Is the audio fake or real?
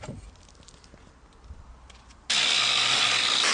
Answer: real